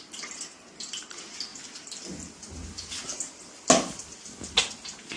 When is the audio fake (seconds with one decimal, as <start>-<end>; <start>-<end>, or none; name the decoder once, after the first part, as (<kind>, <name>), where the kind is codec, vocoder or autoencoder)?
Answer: none